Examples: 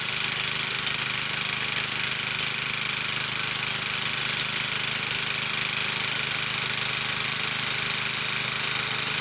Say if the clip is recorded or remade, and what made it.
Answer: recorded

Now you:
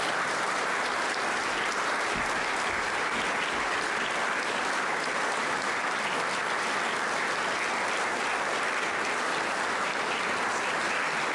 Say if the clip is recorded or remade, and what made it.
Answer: recorded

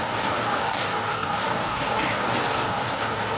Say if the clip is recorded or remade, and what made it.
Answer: remade, codec, DAC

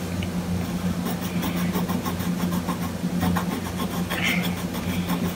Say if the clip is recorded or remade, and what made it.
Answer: recorded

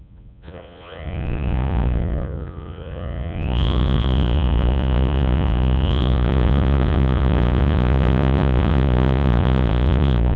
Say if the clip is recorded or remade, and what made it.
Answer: remade, vocoder, Vocos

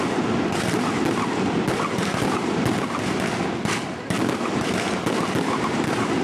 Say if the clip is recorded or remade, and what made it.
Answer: remade, vocoder, BigVGAN v2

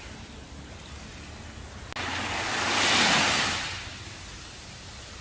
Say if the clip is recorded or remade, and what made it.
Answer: recorded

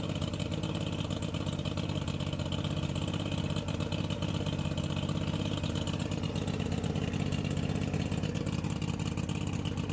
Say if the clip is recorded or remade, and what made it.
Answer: recorded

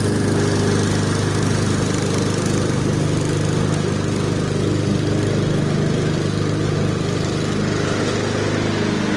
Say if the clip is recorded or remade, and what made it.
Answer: recorded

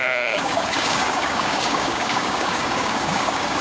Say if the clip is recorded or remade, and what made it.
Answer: remade, codec, DAC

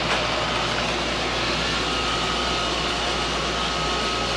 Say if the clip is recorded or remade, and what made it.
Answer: recorded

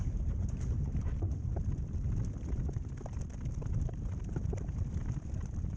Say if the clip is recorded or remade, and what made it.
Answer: recorded